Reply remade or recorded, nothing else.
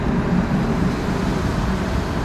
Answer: recorded